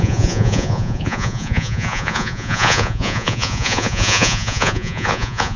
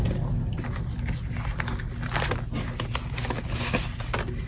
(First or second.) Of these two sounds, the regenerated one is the first